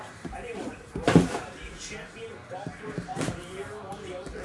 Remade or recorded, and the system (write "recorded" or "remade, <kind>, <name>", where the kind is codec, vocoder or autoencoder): remade, vocoder, BigVGAN v2